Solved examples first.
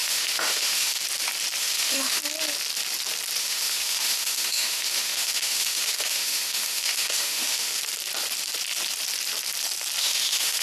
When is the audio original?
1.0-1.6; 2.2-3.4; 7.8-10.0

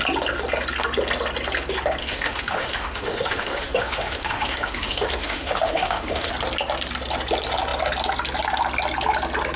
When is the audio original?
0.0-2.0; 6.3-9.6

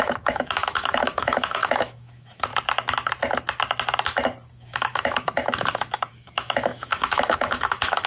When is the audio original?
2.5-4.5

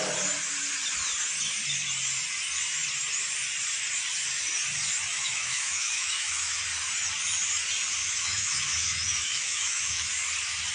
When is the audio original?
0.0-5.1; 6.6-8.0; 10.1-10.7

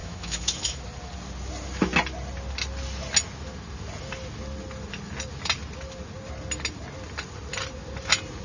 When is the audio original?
0.8-8.4

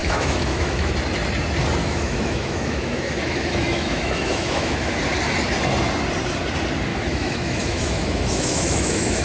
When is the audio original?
0.9-1.8; 5.0-6.9

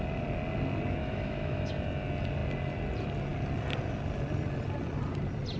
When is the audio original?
0.0-1.0; 1.7-5.6